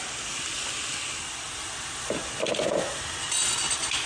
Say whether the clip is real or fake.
real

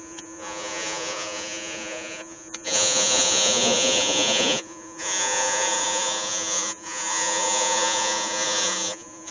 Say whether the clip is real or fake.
fake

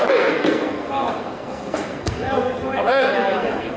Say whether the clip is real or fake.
fake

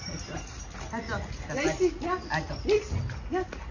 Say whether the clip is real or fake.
real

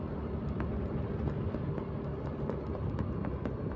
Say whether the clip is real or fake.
real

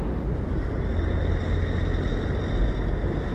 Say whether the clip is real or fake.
real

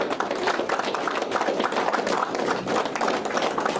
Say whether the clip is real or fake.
real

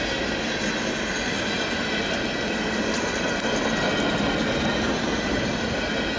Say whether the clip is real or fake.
real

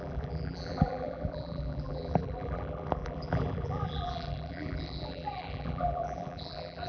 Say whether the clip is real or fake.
fake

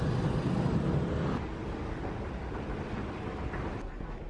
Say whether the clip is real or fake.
fake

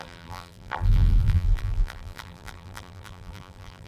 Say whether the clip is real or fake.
fake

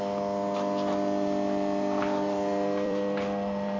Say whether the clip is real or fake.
fake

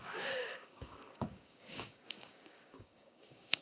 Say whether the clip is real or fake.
fake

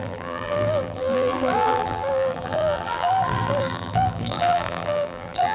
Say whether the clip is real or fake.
fake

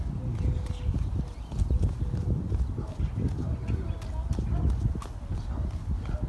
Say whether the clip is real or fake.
real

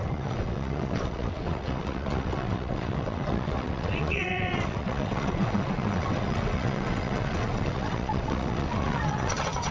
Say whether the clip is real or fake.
fake